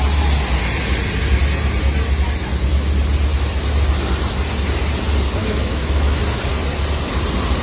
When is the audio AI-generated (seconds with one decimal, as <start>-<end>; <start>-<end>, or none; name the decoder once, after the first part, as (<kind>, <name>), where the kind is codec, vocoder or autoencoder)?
5.4-6.2 (autoencoder, DAC-VAE)